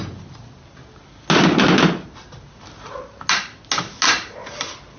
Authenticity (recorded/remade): recorded